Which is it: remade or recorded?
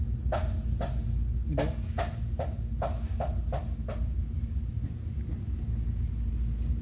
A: recorded